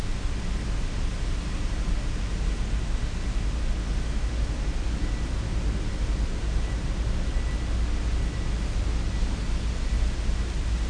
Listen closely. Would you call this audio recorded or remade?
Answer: recorded